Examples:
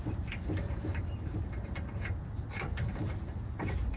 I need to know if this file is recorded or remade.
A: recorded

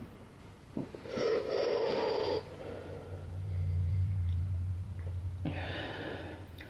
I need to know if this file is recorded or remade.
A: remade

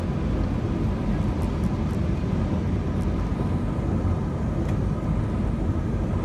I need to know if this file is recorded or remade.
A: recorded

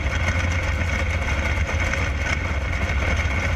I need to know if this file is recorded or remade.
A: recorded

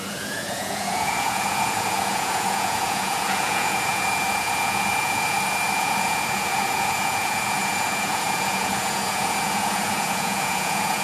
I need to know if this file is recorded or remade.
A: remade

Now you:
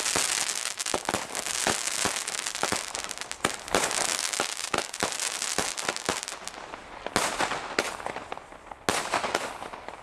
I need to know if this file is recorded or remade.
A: recorded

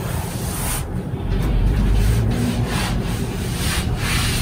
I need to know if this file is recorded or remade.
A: remade